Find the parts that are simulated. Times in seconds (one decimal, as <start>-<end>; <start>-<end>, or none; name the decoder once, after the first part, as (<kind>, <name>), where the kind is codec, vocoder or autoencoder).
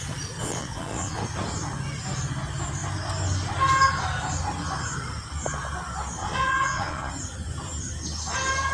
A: 0.4-1.2 (vocoder, Vocos); 6.2-7.1